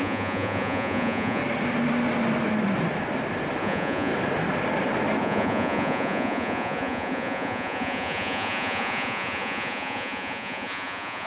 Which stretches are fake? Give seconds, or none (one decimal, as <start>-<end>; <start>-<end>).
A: 0.0-1.4; 3.6-4.1; 5.2-11.3